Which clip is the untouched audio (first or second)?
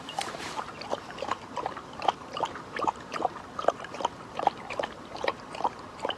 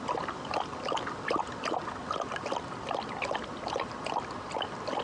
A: second